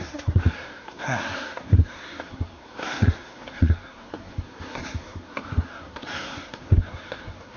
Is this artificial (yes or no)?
yes